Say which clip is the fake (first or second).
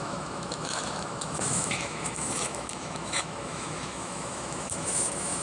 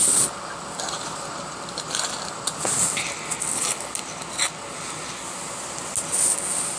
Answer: first